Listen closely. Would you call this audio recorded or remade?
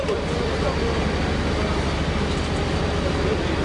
recorded